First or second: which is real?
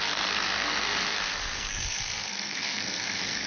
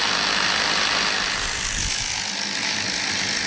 second